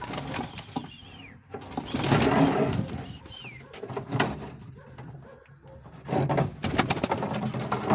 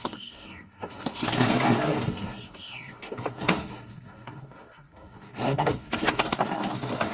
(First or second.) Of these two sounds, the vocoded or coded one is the second